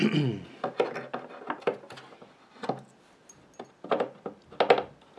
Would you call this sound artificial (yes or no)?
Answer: no